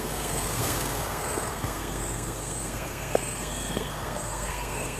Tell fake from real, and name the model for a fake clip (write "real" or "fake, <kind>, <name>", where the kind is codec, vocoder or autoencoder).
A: fake, codec, SNAC